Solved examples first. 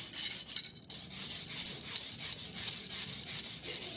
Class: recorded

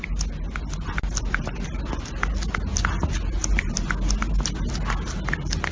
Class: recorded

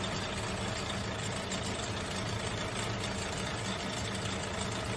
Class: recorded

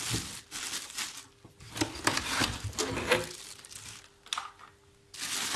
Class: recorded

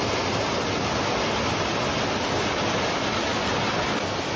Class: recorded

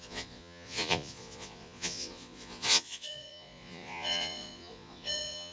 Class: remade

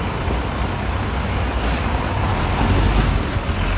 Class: recorded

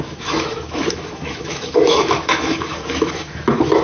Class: remade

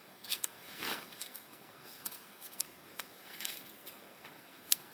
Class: remade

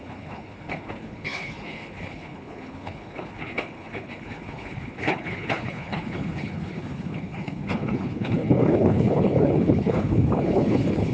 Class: remade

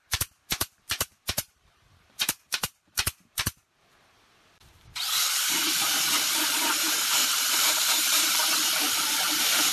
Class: remade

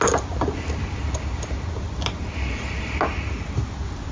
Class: recorded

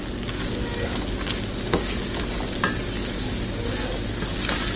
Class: recorded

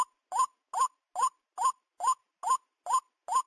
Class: recorded